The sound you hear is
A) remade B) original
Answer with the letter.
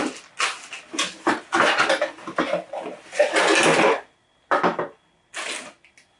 B